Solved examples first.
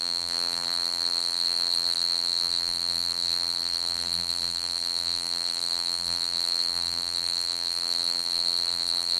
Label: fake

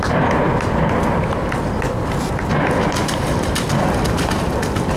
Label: real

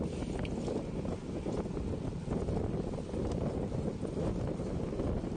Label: real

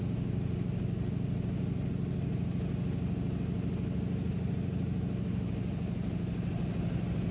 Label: real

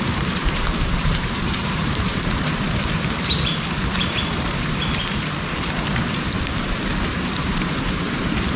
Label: fake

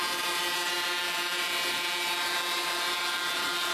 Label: fake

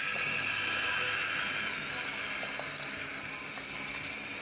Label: real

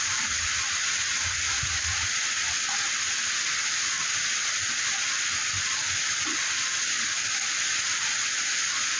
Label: real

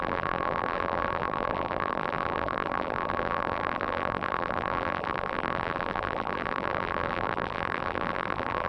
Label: fake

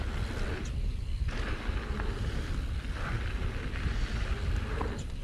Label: real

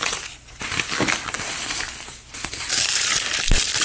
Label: fake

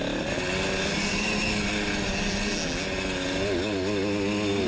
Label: real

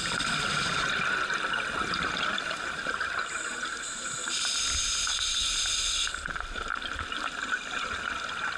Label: real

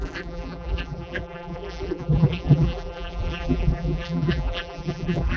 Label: fake